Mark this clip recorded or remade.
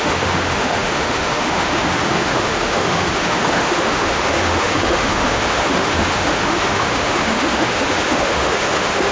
remade